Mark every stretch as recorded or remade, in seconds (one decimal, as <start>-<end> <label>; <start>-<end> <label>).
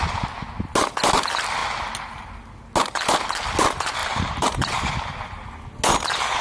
0.0-4.0 recorded; 4.0-4.9 remade; 4.9-6.4 recorded